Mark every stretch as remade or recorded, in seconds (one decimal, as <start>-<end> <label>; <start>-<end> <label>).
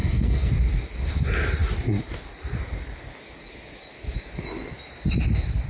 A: 0.0-0.5 remade; 0.5-5.7 recorded